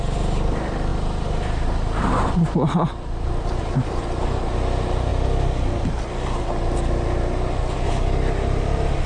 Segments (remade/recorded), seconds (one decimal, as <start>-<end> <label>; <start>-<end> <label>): 0.0-0.9 recorded; 0.9-3.6 remade; 3.6-9.1 recorded